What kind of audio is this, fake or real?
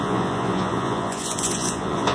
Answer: fake